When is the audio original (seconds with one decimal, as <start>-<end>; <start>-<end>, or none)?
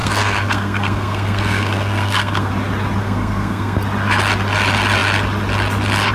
2.5-3.0; 3.8-6.1